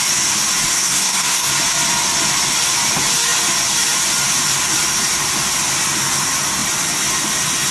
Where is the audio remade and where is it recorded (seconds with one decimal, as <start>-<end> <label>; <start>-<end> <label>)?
0.0-0.7 recorded; 0.7-1.5 remade; 1.5-7.7 recorded